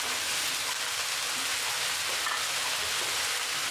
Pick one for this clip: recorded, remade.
remade